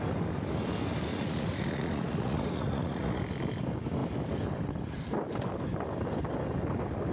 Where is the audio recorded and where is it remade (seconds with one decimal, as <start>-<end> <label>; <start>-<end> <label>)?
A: 0.0-1.1 recorded; 1.1-3.2 remade; 3.2-7.1 recorded